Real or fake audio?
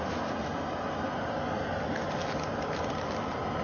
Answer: real